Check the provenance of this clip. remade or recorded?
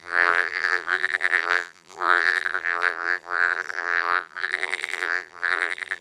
remade